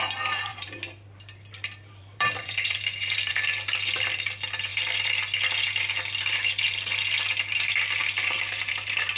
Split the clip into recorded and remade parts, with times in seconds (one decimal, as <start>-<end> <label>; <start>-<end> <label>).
0.0-0.5 recorded; 0.5-3.3 remade; 3.3-8.0 recorded; 8.0-8.7 remade; 8.7-9.2 recorded